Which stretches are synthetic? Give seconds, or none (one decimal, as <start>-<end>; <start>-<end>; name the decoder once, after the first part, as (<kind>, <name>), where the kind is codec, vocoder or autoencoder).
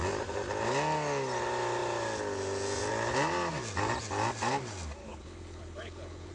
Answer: 5.0-6.3 (codec, HILCodec)